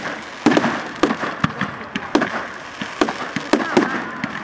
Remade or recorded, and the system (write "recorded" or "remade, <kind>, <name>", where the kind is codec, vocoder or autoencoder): recorded